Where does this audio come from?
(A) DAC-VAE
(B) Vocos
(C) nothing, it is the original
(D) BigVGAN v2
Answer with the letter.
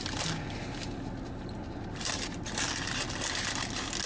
C